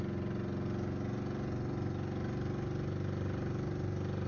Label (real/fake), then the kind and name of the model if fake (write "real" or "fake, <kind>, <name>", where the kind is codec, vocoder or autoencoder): real